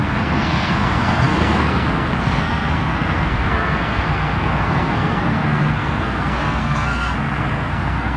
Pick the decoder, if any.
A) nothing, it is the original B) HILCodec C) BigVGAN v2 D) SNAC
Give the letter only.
D